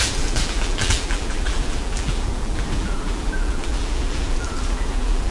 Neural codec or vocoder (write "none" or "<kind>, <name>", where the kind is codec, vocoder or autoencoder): vocoder, BigVGAN v2